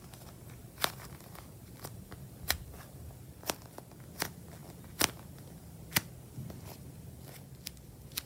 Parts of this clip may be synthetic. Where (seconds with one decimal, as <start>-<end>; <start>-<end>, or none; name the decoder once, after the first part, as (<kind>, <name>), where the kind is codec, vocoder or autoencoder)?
0.6-3.8 (vocoder, BigVGAN v2); 4.6-5.3